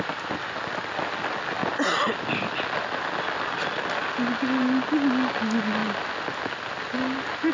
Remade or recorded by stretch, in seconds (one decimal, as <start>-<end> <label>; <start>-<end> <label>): 0.0-7.5 recorded